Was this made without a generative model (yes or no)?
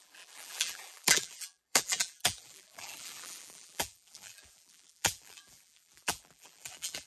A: no